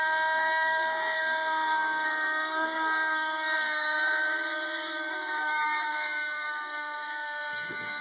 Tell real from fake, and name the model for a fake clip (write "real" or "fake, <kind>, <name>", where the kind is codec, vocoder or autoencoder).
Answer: fake, codec, SNAC